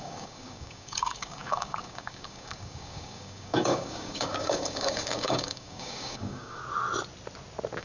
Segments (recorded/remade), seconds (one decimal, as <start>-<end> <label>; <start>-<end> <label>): 0.0-6.6 remade; 6.6-7.8 recorded